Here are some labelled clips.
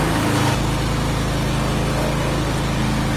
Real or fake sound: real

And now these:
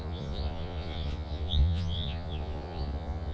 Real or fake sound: fake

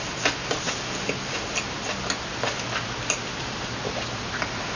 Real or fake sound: real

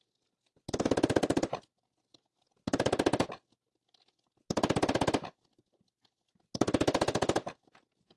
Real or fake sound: real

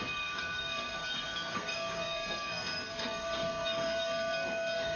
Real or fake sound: fake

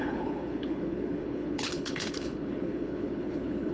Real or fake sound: fake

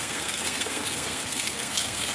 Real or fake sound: fake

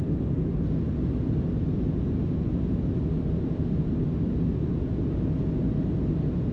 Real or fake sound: real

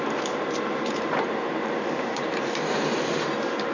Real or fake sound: fake